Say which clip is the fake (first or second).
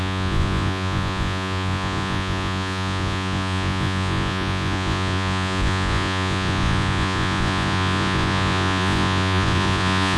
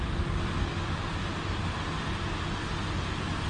first